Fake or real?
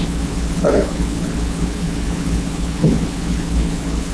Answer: fake